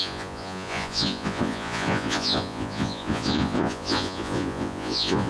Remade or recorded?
remade